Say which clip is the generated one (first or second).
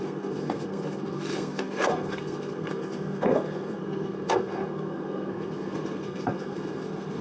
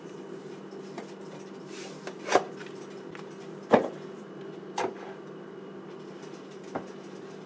first